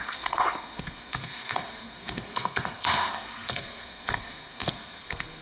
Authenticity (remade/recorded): remade